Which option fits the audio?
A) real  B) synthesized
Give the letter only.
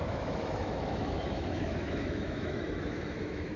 B